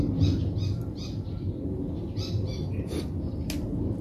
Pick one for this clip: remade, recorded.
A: recorded